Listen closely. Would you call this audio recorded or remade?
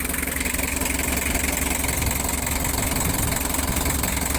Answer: recorded